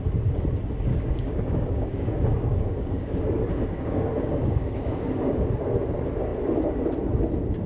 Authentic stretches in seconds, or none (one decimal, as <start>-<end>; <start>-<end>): 0.0-0.9; 5.5-7.7